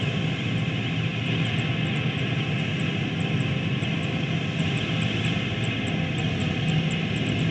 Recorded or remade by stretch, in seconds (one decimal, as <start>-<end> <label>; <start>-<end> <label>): 0.0-7.5 recorded